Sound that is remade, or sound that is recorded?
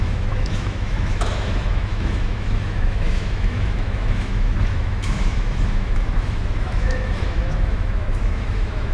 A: remade